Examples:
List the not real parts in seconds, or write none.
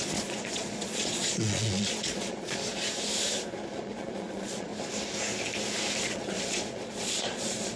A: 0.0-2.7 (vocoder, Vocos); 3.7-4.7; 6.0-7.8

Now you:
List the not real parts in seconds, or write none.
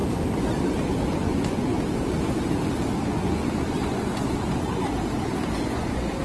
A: 1.2-1.7 (vocoder, Vocos); 3.1-4.8; 5.6-6.2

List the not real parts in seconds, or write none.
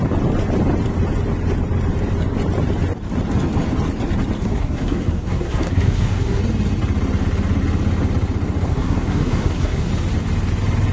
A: 4.4-6.4 (codec, SNAC); 8.7-9.9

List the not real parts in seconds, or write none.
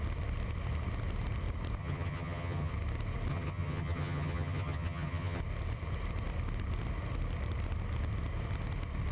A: 1.8-2.7 (vocoder, HiFi-GAN); 3.3-5.4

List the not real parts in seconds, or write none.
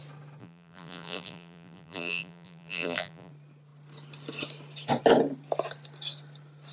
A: 0.4-3.3 (vocoder, BigVGAN v2)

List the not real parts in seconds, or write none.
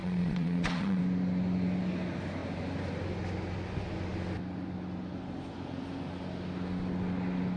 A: 0.0-1.0 (vocoder, Vocos)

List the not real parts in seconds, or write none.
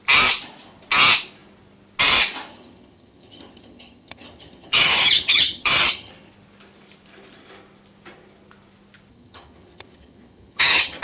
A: 2.5-6.1 (vocoder, HiFi-GAN); 9.1-11.0